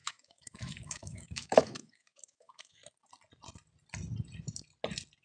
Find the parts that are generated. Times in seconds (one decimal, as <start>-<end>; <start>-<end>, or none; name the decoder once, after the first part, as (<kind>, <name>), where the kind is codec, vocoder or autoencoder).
0.0-2.8 (autoencoder, DAC-VAE)